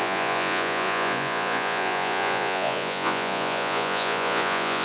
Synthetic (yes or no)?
yes